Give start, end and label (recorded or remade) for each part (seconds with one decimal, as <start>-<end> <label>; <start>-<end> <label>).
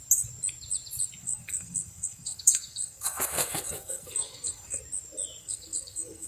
0.0-1.2 recorded; 1.2-4.8 remade; 4.8-5.4 recorded; 5.4-6.3 remade